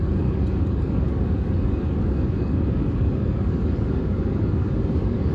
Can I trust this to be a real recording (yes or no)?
no